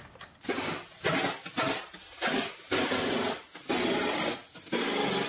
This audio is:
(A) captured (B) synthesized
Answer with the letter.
A